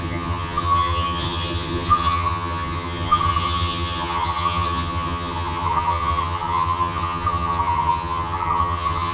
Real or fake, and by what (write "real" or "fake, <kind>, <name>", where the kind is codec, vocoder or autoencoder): fake, vocoder, HiFi-GAN